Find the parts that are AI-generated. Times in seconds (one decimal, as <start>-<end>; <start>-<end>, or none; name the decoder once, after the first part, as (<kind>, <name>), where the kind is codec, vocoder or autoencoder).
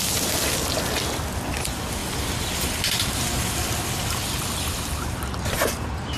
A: 2.0-5.3 (vocoder, BigVGAN v2)